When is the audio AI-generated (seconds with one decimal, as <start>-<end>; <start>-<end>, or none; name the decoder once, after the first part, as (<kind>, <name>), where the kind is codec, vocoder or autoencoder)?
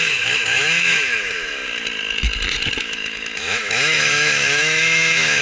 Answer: 0.0-1.6 (autoencoder, DAC-VAE); 2.8-5.4